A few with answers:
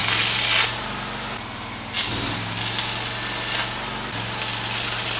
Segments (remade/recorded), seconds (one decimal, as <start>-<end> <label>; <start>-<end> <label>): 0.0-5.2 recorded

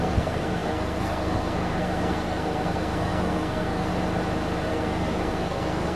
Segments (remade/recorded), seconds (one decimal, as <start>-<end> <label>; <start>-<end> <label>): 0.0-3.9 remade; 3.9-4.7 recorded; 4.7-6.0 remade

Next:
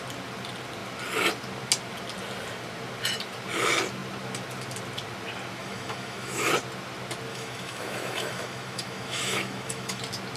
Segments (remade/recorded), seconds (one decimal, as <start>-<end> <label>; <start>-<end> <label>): 0.0-5.6 recorded; 5.6-6.5 remade; 6.5-7.3 recorded; 7.3-10.0 remade; 10.0-10.4 recorded